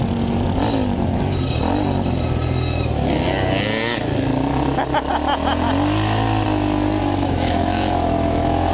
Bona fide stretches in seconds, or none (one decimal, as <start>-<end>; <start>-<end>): 0.0-7.0